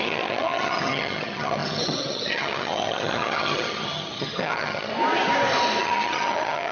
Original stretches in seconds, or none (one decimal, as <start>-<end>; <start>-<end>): 4.9-5.8